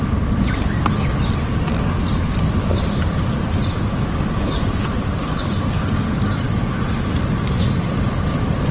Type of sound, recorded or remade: recorded